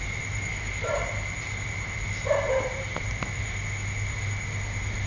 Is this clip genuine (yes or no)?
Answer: yes